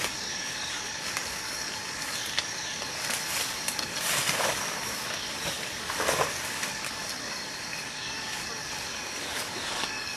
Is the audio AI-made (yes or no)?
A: yes